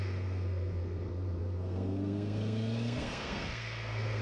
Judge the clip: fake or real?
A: fake